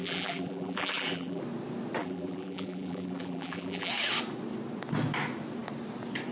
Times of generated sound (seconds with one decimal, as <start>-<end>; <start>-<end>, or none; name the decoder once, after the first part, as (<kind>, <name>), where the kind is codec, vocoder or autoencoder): 0.0-1.4 (vocoder, BigVGAN v2); 2.0-3.9